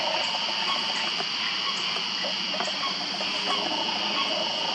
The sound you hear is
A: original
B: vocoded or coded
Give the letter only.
A